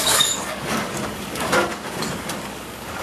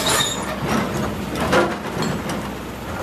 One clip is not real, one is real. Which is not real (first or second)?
first